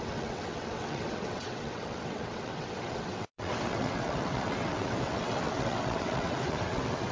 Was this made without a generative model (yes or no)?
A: no